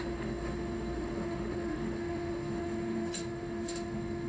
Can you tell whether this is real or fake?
fake